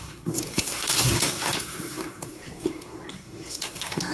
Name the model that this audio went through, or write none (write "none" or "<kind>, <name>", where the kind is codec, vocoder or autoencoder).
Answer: codec, SNAC